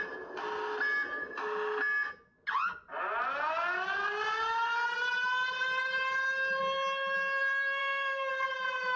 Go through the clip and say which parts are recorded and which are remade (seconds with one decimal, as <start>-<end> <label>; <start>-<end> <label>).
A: 0.0-7.8 recorded; 7.8-8.3 remade; 8.3-9.0 recorded